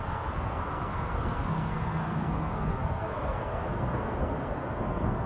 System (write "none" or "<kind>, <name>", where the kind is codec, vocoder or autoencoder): codec, SNAC